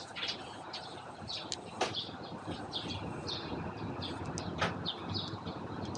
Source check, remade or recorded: recorded